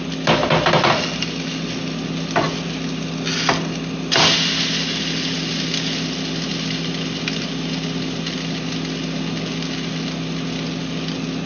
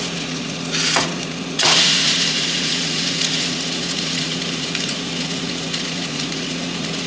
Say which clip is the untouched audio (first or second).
first